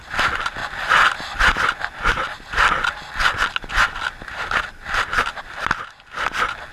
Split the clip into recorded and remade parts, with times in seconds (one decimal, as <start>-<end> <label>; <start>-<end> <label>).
0.0-6.7 recorded